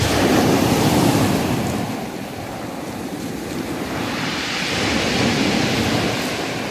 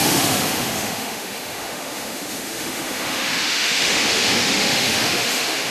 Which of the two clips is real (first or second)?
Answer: first